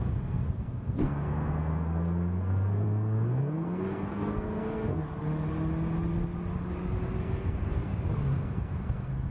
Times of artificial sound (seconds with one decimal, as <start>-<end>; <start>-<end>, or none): 0.0-5.0; 7.2-7.9; 8.4-9.3